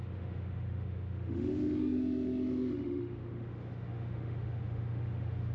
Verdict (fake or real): fake